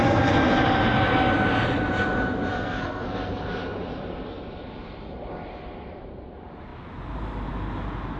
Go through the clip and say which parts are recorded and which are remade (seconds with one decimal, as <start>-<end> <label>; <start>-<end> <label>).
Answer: 0.0-2.5 recorded; 2.5-3.3 remade; 3.3-8.2 recorded